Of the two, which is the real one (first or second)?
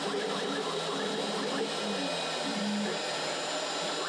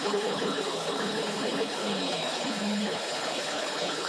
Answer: first